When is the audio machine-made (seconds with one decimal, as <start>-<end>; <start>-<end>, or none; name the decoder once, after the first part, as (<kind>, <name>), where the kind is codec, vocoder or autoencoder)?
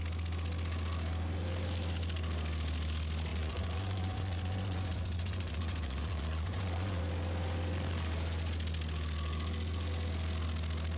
3.3-7.0 (vocoder, Vocos)